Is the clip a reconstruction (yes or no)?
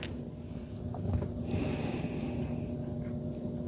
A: no